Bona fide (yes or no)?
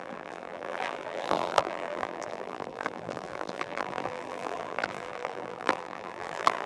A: no